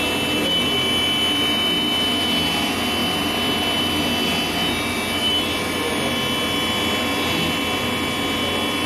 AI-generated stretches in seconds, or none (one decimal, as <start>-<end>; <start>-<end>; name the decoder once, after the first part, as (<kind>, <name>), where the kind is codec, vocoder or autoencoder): 3.0-3.8 (vocoder, BigVGAN v2)